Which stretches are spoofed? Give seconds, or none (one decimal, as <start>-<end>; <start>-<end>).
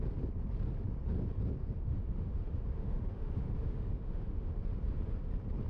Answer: 1.6-4.6